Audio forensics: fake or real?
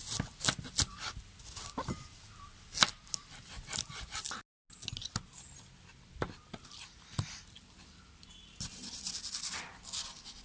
real